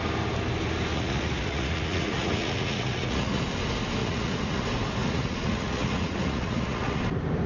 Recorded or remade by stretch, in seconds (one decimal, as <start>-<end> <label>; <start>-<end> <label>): 0.0-0.9 recorded; 0.9-3.4 remade; 3.4-4.0 recorded; 4.0-4.6 remade; 4.6-5.0 recorded; 5.0-7.0 remade; 7.0-7.5 recorded